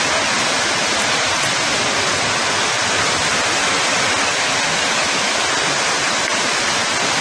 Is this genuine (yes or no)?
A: yes